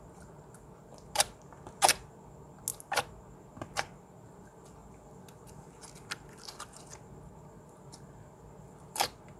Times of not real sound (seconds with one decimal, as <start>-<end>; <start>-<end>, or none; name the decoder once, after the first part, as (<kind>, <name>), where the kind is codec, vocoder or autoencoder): none